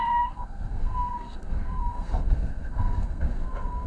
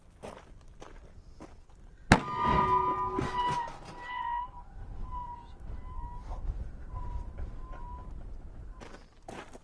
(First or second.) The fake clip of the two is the first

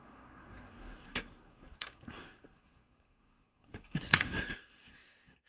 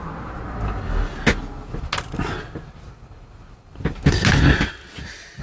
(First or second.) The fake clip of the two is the first